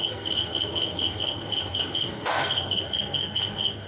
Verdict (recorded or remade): remade